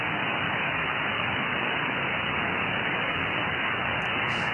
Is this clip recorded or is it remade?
remade